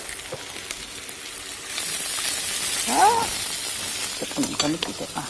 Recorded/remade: recorded